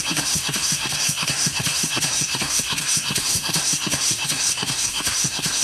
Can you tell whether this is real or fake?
fake